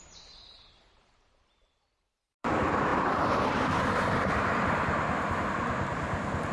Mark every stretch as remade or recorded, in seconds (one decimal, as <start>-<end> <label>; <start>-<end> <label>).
0.0-6.5 remade